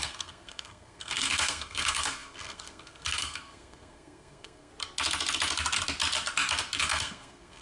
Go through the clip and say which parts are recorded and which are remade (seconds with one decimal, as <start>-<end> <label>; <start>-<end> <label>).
0.0-4.7 remade; 4.7-6.8 recorded; 6.8-7.6 remade